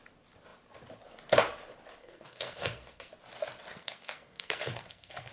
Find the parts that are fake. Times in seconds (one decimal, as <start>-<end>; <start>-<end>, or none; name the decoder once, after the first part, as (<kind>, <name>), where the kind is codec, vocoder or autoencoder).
2.0-3.1 (codec, SNAC); 3.7-5.3